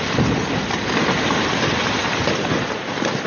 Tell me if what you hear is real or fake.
real